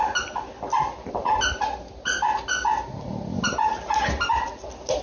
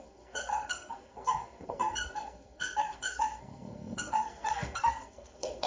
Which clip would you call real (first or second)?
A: first